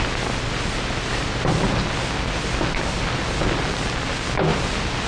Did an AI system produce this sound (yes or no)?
no